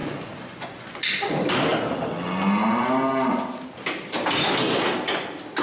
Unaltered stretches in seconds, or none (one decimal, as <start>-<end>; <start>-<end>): 1.0-5.6